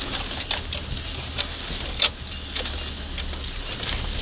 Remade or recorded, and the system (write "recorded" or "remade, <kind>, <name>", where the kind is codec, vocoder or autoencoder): recorded